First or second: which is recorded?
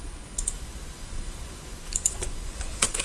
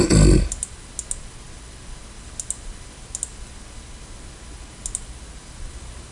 second